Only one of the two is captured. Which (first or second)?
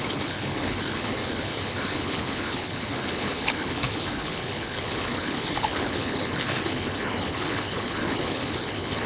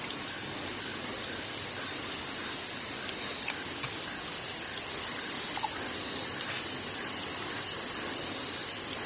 second